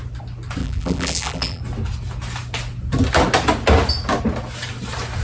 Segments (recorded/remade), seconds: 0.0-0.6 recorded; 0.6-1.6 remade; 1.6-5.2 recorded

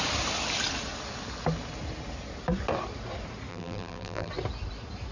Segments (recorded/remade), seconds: 0.0-3.5 recorded; 3.5-4.3 remade; 4.3-5.1 recorded

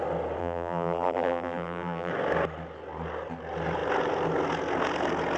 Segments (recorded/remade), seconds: 0.0-0.4 recorded; 0.4-2.1 remade; 2.1-5.4 recorded

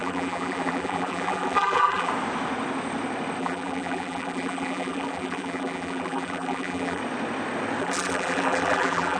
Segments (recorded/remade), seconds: 0.0-2.1 remade; 2.1-3.4 recorded; 3.4-7.0 remade; 7.0-7.8 recorded; 7.8-9.2 remade

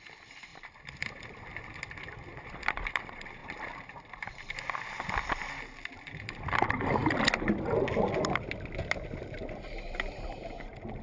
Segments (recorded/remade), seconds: 0.0-0.5 recorded; 0.5-1.5 remade; 1.5-3.4 recorded; 3.4-4.5 remade; 4.5-11.0 recorded

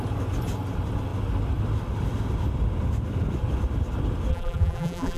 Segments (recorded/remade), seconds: 0.0-4.3 recorded; 4.3-5.2 remade

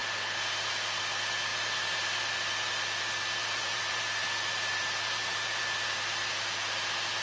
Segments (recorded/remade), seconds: 0.0-1.5 recorded; 1.5-2.3 remade; 2.3-3.4 recorded; 3.4-5.6 remade; 5.6-7.2 recorded